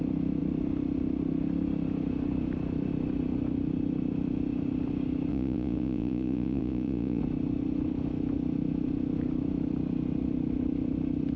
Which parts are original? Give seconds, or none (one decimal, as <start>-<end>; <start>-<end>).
0.0-5.3; 7.2-11.4